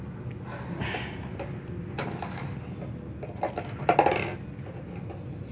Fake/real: real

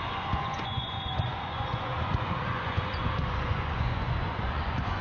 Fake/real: fake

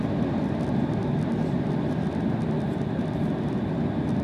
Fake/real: real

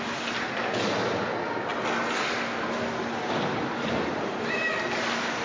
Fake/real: real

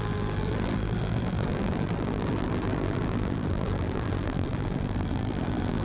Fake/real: fake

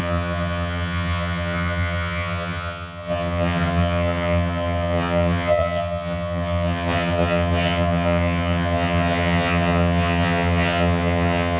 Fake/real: fake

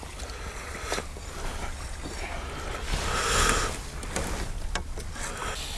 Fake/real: real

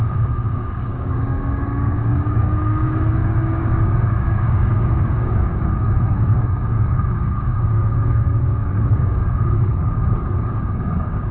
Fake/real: fake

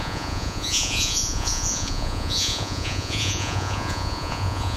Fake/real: fake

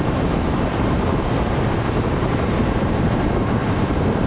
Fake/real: fake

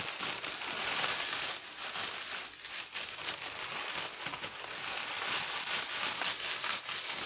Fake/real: real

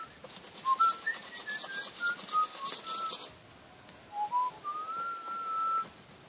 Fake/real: real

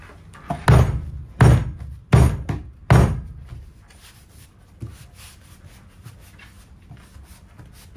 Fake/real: real